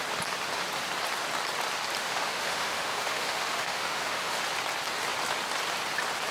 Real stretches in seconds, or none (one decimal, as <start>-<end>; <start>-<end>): 0.0-2.0; 4.4-6.3